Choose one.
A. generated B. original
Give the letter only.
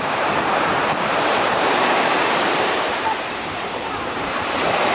A